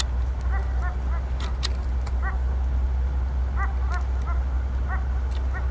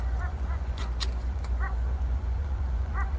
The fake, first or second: second